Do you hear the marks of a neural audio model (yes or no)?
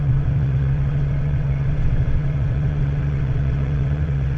yes